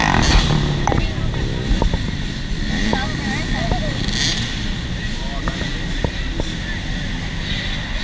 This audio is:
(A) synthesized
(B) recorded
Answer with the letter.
B